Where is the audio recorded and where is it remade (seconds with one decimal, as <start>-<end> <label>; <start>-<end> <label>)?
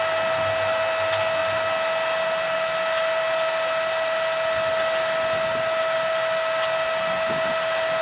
0.0-8.0 recorded